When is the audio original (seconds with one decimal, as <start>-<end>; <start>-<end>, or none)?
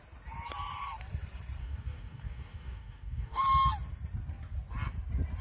0.0-1.6; 3.4-5.4